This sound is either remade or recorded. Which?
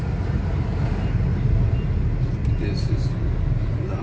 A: recorded